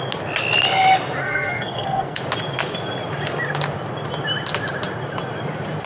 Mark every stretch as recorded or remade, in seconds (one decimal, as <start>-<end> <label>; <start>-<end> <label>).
0.0-1.2 recorded; 1.2-2.2 remade; 2.2-5.9 recorded

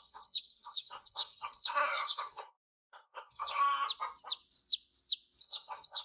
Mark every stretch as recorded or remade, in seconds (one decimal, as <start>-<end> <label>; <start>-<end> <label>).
0.0-3.6 remade; 3.6-5.4 recorded; 5.4-6.0 remade

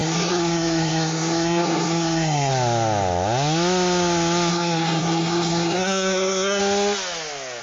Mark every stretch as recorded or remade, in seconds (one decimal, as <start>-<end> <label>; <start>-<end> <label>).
0.0-2.5 remade; 2.5-4.5 recorded; 4.5-6.6 remade; 6.6-7.6 recorded